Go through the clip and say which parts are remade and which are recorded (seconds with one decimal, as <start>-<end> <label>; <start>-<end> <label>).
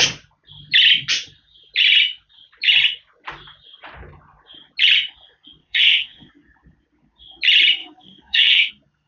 0.0-5.6 recorded; 5.6-6.3 remade; 6.3-7.8 recorded; 7.8-8.7 remade; 8.7-9.1 recorded